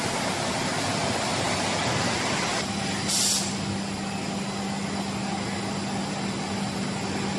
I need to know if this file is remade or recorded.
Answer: recorded